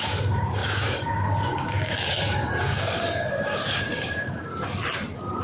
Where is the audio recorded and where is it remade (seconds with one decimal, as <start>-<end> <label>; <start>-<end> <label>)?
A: 0.0-4.5 remade; 4.5-5.4 recorded